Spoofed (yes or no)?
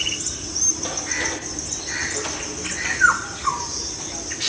no